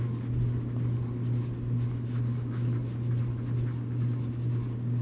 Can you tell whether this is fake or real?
real